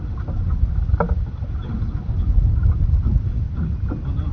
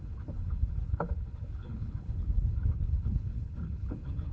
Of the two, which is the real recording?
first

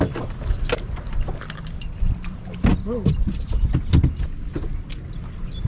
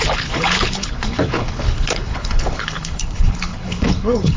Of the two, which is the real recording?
first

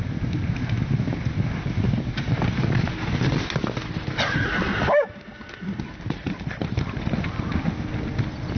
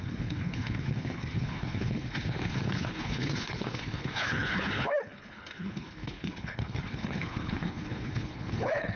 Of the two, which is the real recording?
first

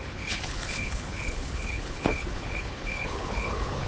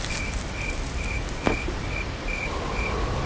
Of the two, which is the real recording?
second